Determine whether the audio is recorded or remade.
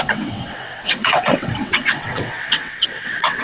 remade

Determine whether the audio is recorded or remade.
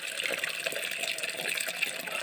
recorded